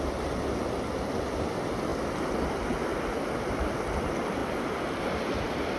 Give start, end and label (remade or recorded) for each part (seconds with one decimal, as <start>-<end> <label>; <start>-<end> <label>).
0.0-5.8 recorded